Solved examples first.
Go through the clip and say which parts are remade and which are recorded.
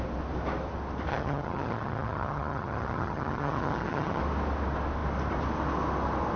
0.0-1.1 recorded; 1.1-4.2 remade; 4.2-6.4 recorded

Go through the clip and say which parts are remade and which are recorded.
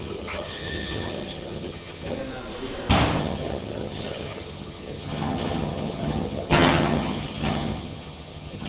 0.0-2.2 remade; 2.2-3.2 recorded; 3.2-8.7 remade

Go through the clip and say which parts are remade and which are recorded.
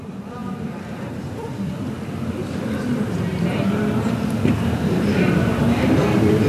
0.0-6.5 recorded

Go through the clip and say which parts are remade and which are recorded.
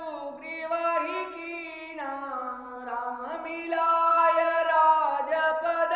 0.0-2.4 recorded; 2.4-3.5 remade; 3.5-4.1 recorded; 4.1-4.8 remade; 4.8-6.0 recorded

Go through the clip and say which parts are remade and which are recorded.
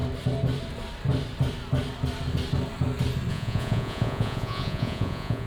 0.0-3.3 recorded; 3.3-5.5 remade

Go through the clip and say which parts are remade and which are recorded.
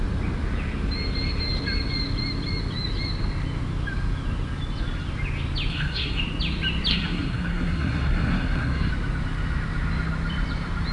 0.0-5.7 recorded; 5.7-6.2 remade; 6.2-6.9 recorded; 6.9-8.9 remade; 8.9-10.9 recorded